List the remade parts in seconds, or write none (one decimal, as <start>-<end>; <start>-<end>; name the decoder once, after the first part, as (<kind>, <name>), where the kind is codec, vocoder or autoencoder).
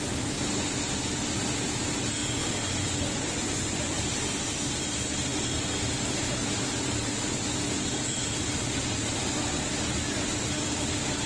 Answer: 2.2-4.0 (vocoder, Vocos)